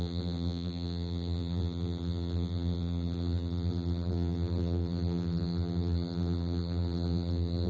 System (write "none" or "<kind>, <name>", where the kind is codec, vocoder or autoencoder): vocoder, BigVGAN v2